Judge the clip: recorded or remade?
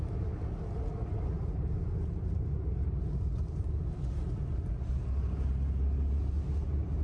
recorded